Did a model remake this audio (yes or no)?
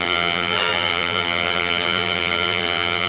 yes